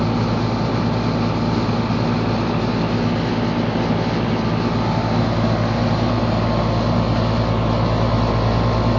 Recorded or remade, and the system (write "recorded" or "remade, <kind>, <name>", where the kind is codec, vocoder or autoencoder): recorded